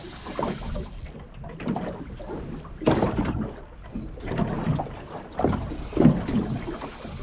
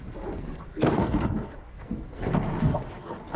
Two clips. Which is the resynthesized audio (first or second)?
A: second